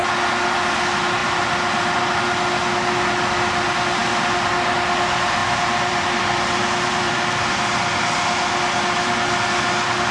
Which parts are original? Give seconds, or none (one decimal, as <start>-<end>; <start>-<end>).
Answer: 0.0-4.0; 4.5-5.4; 7.5-10.1